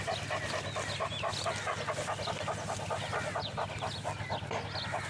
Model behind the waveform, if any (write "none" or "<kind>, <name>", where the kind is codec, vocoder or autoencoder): none